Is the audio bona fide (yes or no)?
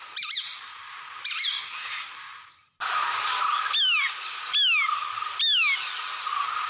yes